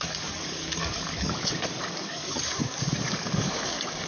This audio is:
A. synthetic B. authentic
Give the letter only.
A